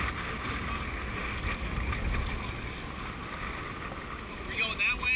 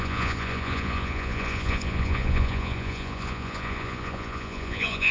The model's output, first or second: second